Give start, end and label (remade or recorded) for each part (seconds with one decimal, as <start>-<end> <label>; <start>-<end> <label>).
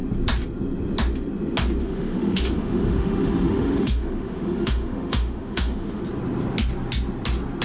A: 0.0-1.8 recorded; 1.8-6.0 remade; 6.0-7.6 recorded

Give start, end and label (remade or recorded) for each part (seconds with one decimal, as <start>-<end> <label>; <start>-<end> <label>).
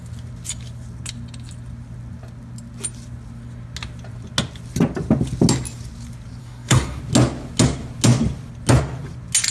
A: 0.0-6.4 recorded; 6.4-7.0 remade; 7.0-9.5 recorded